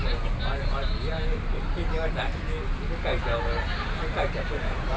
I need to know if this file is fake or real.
real